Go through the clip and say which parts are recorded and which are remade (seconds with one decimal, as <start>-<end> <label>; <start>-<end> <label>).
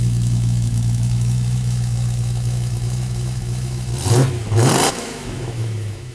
0.0-3.9 remade; 3.9-4.9 recorded; 4.9-6.1 remade